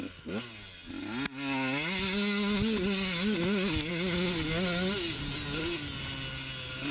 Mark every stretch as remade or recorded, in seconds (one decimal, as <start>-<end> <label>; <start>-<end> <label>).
0.0-6.9 recorded